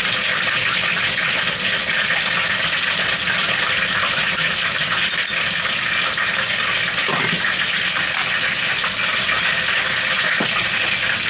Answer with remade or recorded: recorded